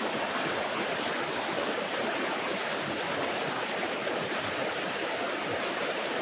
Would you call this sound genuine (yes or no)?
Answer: yes